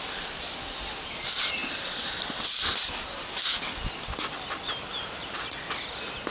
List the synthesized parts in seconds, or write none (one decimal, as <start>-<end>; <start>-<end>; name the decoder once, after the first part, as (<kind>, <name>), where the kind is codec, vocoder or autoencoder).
none